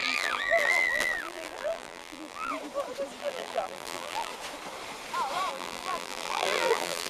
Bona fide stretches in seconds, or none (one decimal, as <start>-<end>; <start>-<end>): 2.5-3.2; 4.3-5.5